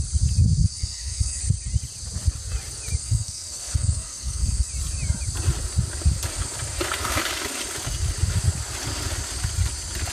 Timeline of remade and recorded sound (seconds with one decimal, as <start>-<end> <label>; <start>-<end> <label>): 0.0-0.6 recorded; 0.6-1.4 remade; 1.4-3.0 recorded; 3.0-4.7 remade; 4.7-10.1 recorded